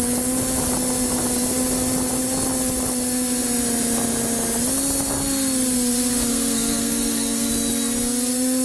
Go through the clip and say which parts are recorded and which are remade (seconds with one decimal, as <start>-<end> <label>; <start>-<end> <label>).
0.0-6.3 recorded; 6.3-7.5 remade; 7.5-8.6 recorded